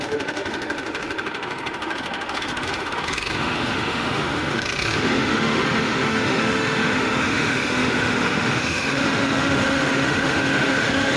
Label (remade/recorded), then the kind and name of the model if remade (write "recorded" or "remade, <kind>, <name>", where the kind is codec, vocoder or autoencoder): remade, autoencoder, DAC-VAE